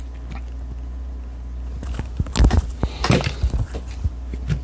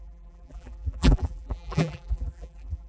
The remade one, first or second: second